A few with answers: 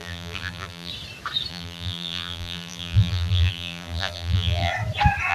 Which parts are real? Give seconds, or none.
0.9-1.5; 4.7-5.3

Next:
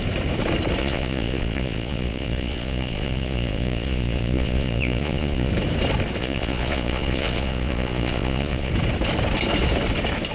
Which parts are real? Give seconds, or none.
0.0-0.8; 5.5-6.2; 8.7-10.3